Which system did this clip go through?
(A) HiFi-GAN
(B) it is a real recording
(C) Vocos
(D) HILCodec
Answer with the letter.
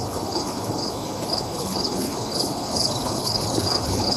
D